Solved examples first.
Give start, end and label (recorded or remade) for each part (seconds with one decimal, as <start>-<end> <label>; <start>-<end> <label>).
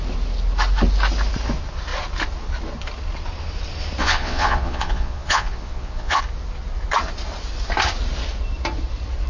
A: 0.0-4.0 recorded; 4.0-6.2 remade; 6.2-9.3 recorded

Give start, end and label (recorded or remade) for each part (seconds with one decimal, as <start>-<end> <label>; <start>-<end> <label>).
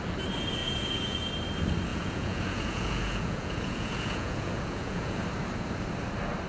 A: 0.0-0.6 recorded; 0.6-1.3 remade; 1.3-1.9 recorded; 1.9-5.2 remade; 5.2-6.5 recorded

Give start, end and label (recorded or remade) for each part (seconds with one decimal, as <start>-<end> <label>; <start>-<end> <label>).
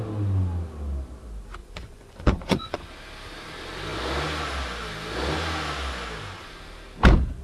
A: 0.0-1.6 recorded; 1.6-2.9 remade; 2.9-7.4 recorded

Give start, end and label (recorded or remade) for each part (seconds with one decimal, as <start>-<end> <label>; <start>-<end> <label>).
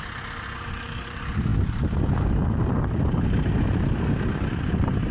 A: 0.0-5.1 recorded